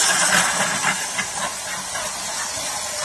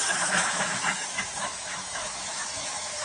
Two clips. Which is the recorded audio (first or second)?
first